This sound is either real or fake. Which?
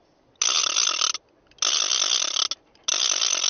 real